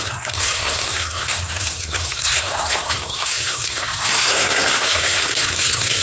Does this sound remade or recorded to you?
remade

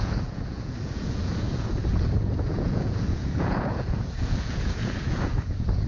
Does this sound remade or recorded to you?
remade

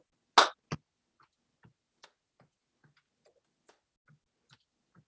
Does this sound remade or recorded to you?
recorded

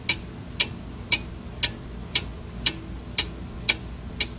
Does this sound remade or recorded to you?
recorded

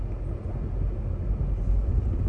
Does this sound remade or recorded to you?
recorded